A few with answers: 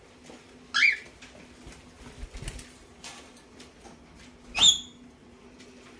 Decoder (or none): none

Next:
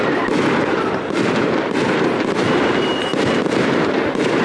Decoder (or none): vocoder, BigVGAN v2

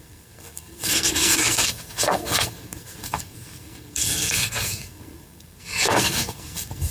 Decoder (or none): codec, SNAC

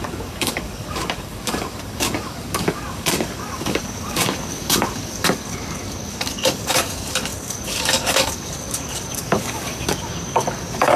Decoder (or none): codec, DAC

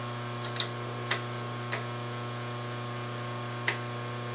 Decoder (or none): none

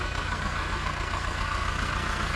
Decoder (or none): codec, SNAC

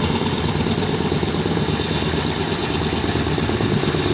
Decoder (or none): none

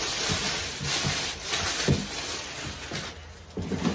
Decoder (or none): none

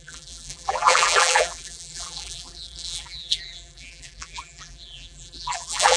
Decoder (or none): vocoder, BigVGAN v2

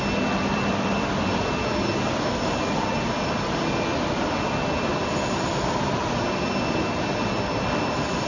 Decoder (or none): none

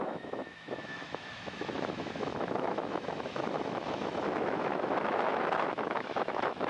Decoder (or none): autoencoder, DAC-VAE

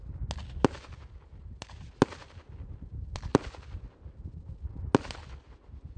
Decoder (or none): none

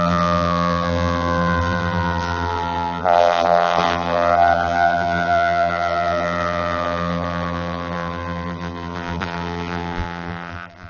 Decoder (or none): vocoder, BigVGAN v2